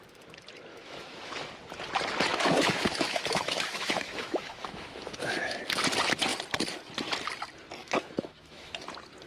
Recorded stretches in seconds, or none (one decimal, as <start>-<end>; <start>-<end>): 0.0-0.7; 1.5-2.3; 5.6-7.8; 8.7-9.3